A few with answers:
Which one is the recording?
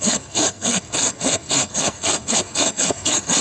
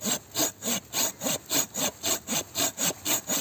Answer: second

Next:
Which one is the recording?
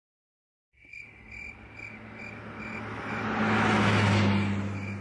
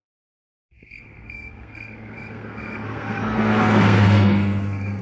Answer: first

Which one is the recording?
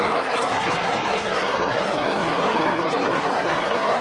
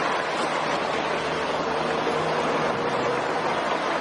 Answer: second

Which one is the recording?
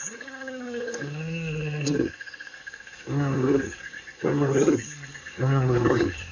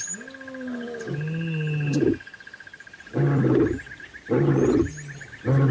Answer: second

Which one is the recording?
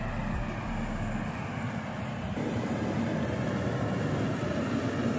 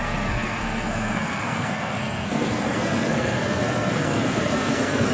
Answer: first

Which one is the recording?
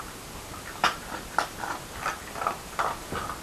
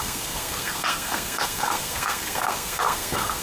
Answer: first